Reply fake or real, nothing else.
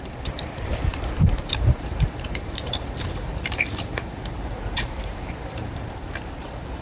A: fake